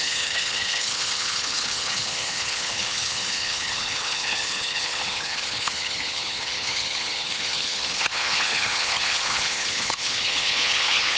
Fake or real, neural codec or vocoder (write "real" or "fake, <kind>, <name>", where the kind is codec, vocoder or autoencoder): fake, codec, HILCodec